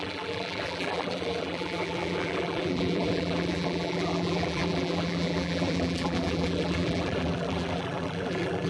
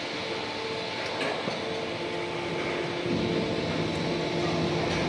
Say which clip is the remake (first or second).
first